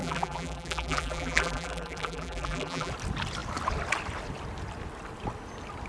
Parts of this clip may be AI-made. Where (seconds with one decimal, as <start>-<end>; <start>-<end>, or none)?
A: 0.0-2.9